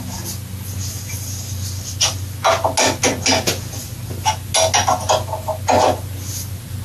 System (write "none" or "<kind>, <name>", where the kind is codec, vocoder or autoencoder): none